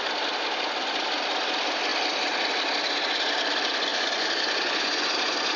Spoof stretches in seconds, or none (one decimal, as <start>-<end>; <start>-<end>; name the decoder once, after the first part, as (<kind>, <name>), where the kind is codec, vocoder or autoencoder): 3.9-5.1 (vocoder, Vocos)